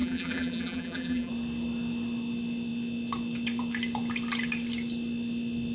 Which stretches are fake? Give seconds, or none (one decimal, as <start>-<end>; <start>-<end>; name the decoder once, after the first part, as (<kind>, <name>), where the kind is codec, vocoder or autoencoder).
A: 0.0-1.3 (vocoder, BigVGAN v2)